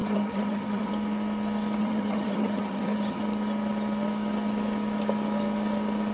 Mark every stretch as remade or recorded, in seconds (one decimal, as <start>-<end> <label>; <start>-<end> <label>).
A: 0.0-0.9 remade; 0.9-1.8 recorded; 1.8-3.2 remade; 3.2-6.1 recorded